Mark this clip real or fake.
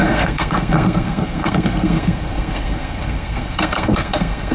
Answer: fake